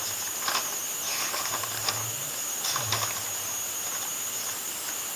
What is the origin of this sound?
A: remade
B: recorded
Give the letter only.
B